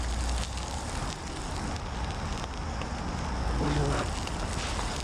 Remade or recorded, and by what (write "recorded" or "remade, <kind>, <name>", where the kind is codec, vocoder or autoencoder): recorded